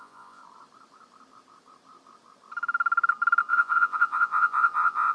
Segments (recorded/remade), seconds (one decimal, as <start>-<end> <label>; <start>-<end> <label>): 0.0-0.4 remade; 0.4-3.5 recorded; 3.5-5.1 remade